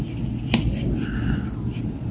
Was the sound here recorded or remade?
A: recorded